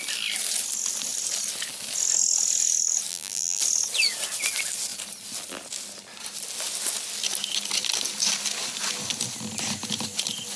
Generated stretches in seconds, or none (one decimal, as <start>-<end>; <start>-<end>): 3.1-3.6